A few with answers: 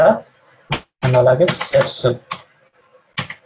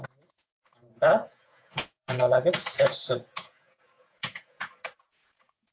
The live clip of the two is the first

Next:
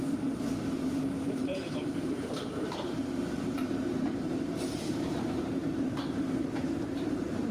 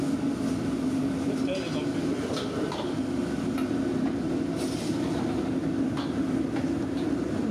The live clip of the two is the second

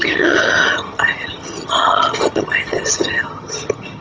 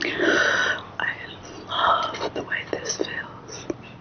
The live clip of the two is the second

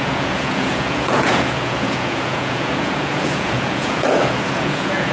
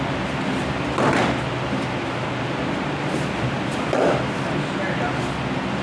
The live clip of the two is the second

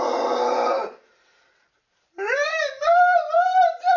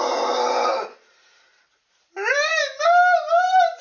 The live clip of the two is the second